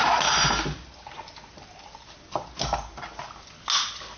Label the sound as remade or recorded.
recorded